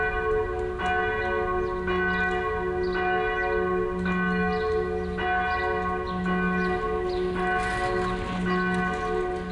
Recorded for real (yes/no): yes